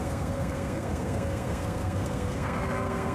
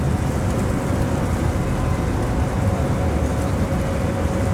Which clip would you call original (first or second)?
second